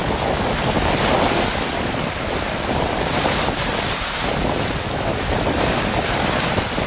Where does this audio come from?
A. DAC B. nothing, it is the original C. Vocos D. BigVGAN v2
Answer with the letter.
D